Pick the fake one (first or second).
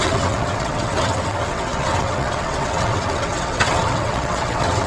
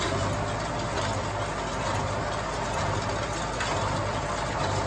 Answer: first